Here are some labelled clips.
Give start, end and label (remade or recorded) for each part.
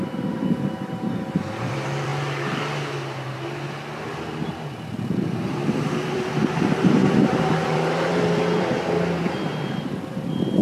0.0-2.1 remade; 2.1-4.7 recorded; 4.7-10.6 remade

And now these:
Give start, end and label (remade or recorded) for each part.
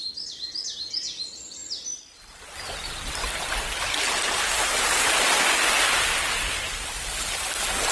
0.0-7.9 recorded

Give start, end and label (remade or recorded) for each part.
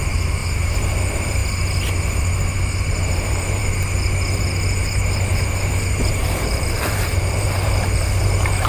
0.0-1.4 remade; 1.4-2.9 recorded; 2.9-3.6 remade; 3.6-6.1 recorded; 6.1-8.7 remade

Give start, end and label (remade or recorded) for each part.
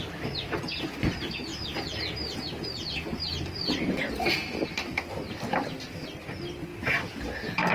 0.0-1.5 remade; 1.5-3.2 recorded; 3.2-7.7 remade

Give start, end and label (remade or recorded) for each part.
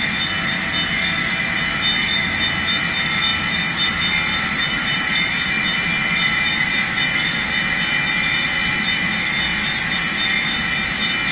0.0-3.3 recorded; 3.3-3.9 remade; 3.9-4.3 recorded; 4.3-5.3 remade; 5.3-11.3 recorded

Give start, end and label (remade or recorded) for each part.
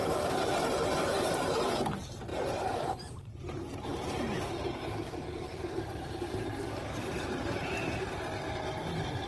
0.0-2.3 recorded; 2.3-7.3 remade; 7.3-9.3 recorded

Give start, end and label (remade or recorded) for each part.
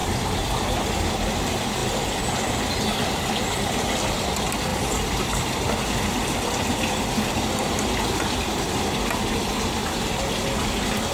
0.0-1.3 remade; 1.3-4.7 recorded; 4.7-9.2 remade; 9.2-11.1 recorded